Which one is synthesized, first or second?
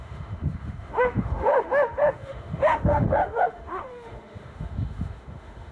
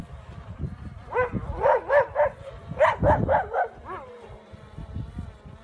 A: first